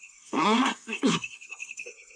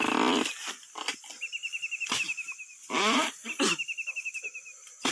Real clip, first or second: second